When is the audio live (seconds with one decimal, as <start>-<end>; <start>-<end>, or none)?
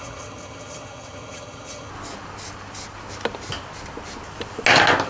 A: 1.9-5.1